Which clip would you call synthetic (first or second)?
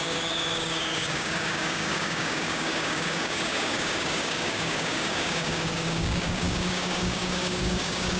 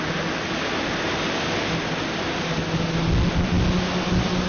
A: first